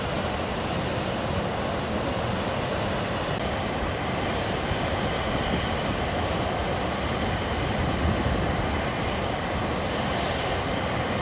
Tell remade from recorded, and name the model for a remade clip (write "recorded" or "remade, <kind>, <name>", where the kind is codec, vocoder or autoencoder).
recorded